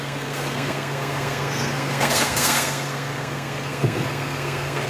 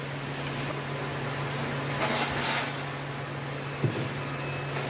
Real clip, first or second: second